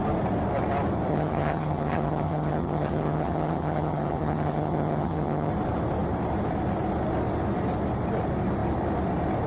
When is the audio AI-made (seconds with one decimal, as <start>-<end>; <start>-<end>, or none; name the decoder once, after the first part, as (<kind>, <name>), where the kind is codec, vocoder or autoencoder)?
1.1-5.5 (vocoder, HiFi-GAN)